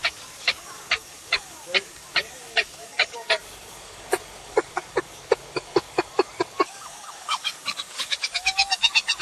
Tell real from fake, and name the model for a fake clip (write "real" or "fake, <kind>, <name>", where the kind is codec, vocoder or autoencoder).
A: fake, codec, DAC